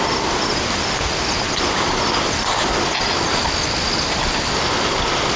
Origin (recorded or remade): recorded